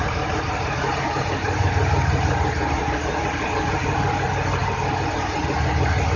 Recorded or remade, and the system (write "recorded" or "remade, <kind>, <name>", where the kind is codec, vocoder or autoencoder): recorded